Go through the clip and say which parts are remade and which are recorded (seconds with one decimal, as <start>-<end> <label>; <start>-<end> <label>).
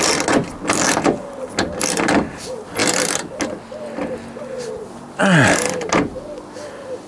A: 0.0-7.1 recorded